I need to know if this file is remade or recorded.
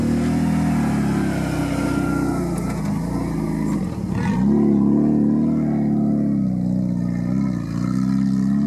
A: recorded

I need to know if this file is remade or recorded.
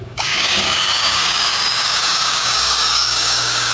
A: remade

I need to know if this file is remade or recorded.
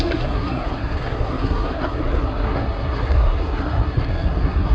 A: remade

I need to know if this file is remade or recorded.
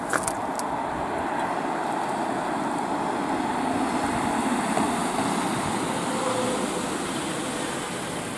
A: recorded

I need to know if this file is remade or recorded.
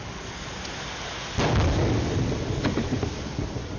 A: recorded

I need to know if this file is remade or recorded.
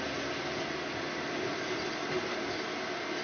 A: recorded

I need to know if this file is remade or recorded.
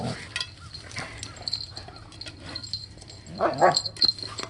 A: recorded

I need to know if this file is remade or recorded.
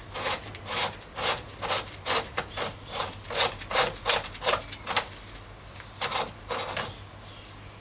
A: recorded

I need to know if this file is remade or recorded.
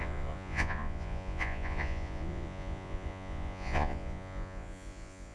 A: remade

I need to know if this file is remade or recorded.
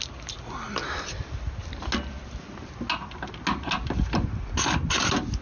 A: recorded